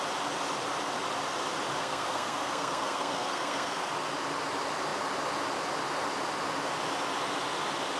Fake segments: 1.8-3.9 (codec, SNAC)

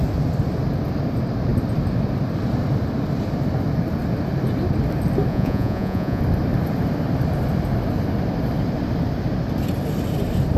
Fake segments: 5.3-6.2 (vocoder, Vocos)

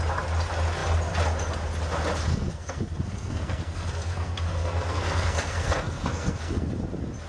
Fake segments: 2.3-6.7 (codec, SNAC)

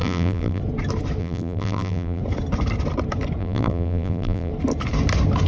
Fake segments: 0.0-0.6 (vocoder, BigVGAN v2); 1.2-2.2; 3.4-4.5

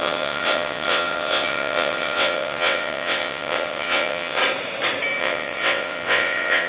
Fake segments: 0.0-4.4 (vocoder, WaveNeXt); 5.2-6.7

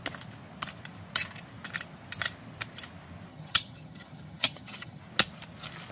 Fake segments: 3.3-5.0 (vocoder, HiFi-GAN)

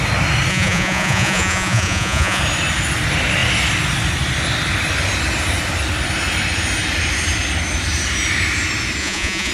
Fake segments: 0.5-2.4 (vocoder, Vocos); 9.0-9.5